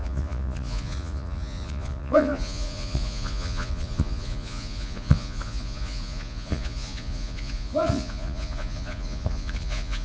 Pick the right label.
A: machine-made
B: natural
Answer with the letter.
A